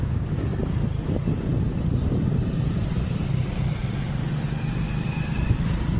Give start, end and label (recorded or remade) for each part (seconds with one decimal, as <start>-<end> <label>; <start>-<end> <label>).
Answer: 0.0-0.6 recorded; 0.6-3.3 remade; 3.3-6.0 recorded